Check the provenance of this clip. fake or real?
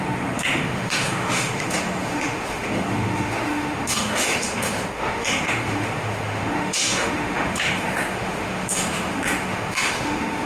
fake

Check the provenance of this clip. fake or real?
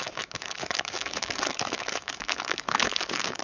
fake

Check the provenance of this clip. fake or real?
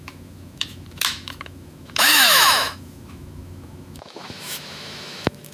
fake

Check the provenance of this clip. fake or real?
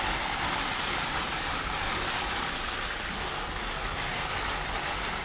real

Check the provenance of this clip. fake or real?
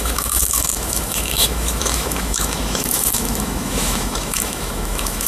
fake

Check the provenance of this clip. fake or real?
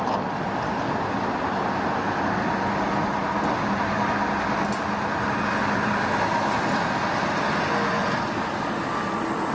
real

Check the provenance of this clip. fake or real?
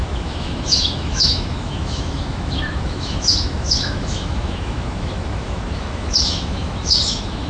fake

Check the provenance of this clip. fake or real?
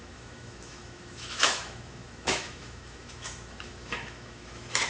fake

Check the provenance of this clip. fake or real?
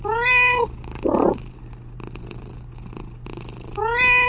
real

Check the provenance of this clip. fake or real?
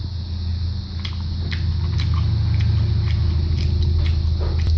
real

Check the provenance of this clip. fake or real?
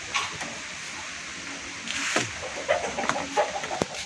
real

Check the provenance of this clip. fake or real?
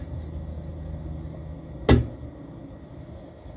real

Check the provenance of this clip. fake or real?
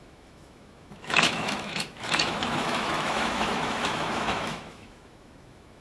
fake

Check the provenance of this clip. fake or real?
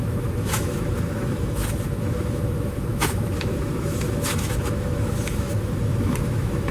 fake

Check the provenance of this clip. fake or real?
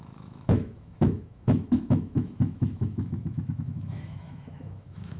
fake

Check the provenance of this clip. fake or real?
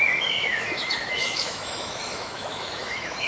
fake